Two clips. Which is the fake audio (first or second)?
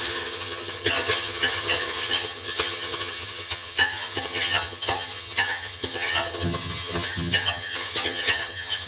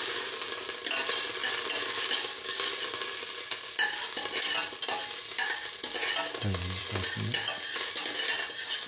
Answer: first